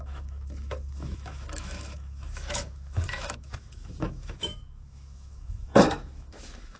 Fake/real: fake